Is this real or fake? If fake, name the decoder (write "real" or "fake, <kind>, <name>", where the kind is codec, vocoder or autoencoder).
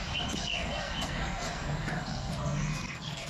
fake, codec, SNAC